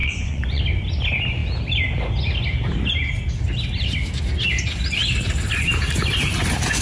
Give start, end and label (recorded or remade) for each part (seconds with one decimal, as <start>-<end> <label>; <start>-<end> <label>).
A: 0.0-0.6 remade; 0.6-6.8 recorded